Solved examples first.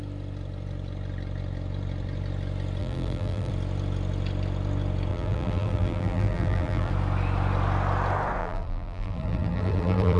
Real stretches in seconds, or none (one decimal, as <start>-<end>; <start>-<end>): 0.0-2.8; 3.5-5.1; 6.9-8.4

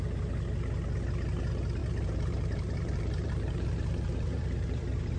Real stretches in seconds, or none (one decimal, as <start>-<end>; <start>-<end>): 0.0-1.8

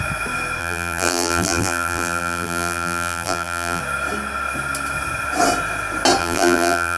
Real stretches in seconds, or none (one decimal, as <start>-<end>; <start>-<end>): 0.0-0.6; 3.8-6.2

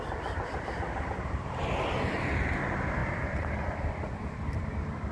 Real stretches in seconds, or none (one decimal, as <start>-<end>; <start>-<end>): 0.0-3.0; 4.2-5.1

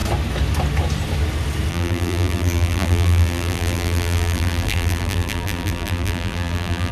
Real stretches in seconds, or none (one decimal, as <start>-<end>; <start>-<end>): 0.0-1.7